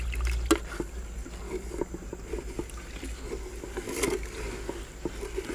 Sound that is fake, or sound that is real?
real